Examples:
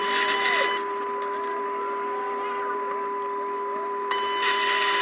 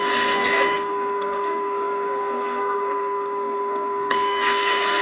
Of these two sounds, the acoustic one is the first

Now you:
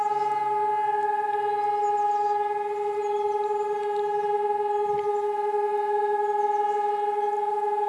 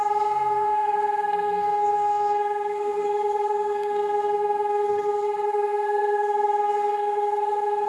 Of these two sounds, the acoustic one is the first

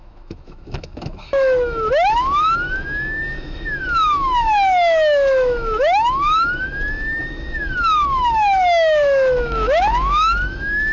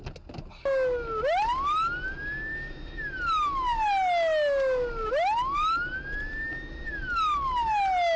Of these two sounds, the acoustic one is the second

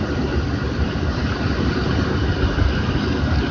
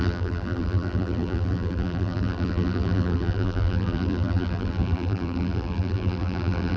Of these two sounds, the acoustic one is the first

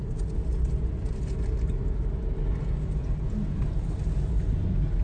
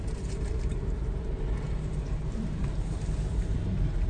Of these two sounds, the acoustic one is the first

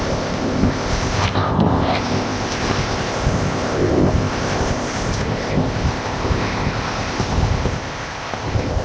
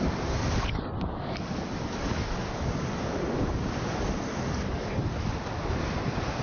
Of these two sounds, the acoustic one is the second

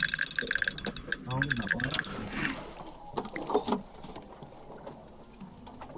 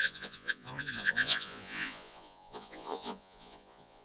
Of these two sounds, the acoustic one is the first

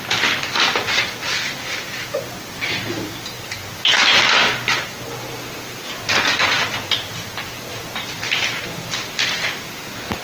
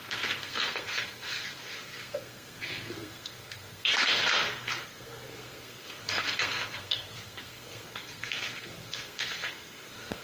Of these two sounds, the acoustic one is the first